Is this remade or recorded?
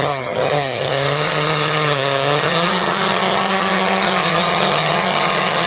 remade